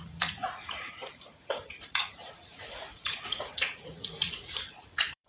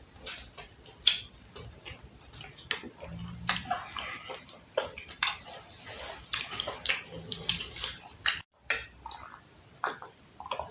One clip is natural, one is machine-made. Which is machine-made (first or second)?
first